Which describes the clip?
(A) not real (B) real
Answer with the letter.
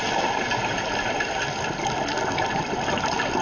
B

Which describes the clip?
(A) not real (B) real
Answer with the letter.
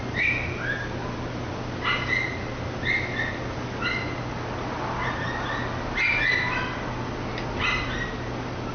B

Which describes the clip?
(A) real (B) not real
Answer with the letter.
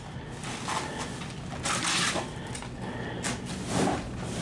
A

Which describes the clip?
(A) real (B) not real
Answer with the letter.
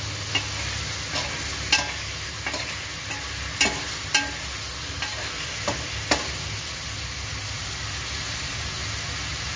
A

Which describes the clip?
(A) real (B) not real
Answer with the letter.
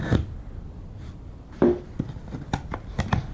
A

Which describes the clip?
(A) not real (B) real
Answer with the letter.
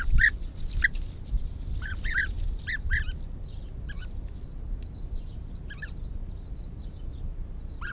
B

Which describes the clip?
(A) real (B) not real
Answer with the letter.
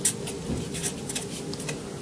A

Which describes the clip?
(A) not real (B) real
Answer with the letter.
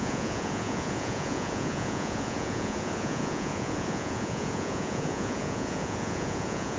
A